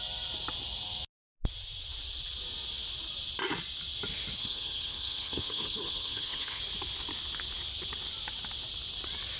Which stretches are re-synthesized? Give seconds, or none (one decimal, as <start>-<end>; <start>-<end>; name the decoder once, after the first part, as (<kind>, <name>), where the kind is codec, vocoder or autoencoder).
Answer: 4.4-6.6 (codec, HILCodec)